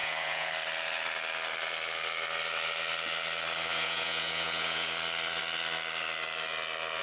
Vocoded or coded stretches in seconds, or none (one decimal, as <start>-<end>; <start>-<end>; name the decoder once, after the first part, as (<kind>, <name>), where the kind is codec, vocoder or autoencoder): 0.0-0.5 (vocoder, Vocos); 3.7-4.9